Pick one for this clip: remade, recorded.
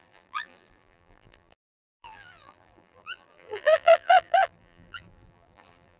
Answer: remade